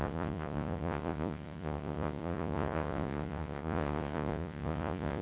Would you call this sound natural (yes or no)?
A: no